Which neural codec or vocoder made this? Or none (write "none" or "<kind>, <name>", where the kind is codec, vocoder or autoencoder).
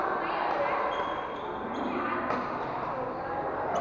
none